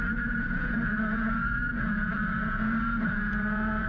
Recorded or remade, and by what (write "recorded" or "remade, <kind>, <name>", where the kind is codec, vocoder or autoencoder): remade, vocoder, Vocos